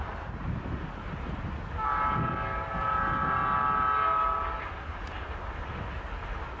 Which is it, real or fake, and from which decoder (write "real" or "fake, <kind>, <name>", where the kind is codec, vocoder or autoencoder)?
real